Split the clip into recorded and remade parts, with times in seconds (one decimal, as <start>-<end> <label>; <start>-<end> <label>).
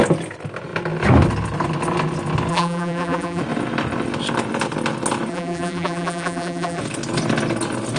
0.0-2.5 recorded; 2.5-3.4 remade; 3.4-5.3 recorded; 5.3-6.8 remade; 6.8-8.0 recorded